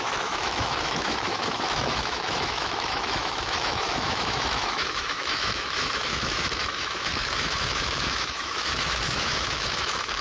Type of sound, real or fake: fake